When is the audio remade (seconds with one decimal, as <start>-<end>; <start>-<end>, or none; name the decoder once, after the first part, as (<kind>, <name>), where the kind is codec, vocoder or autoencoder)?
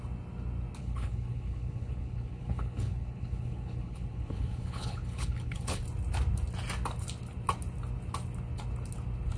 0.8-5.8 (codec, HILCodec)